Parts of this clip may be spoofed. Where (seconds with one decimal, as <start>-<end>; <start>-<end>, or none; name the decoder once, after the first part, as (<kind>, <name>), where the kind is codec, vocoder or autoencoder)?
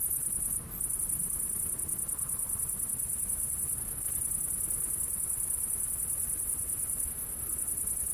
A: none